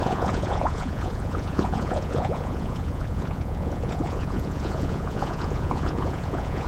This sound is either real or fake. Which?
fake